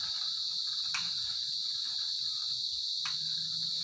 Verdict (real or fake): real